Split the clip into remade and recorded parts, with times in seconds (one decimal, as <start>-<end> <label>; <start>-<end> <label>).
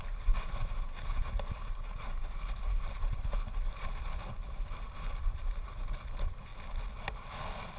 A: 0.0-6.5 remade; 6.5-7.8 recorded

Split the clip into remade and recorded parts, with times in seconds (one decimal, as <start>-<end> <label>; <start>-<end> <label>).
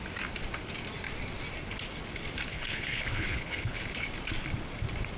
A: 0.0-2.5 recorded; 2.5-3.8 remade; 3.8-5.2 recorded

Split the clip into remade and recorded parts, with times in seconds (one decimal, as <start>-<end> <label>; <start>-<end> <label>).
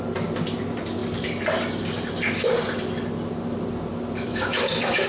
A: 0.0-4.3 recorded; 4.3-5.1 remade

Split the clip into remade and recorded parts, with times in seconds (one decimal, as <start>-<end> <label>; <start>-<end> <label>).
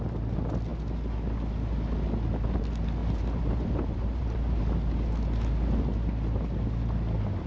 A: 0.0-3.0 recorded; 3.0-4.6 remade; 4.6-7.5 recorded